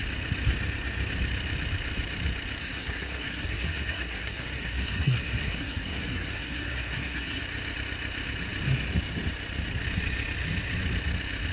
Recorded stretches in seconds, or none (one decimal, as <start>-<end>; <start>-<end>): 0.0-2.6; 7.4-11.5